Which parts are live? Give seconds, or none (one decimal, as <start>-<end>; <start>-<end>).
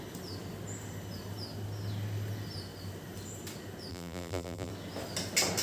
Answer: 0.0-3.9; 4.7-5.6